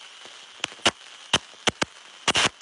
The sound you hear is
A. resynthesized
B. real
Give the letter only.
B